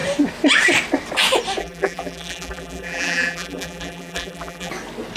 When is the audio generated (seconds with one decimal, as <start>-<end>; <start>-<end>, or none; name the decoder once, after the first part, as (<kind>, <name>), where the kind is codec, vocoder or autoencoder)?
1.6-4.7 (vocoder, BigVGAN v2)